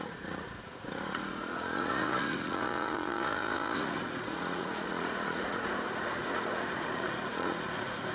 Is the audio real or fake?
fake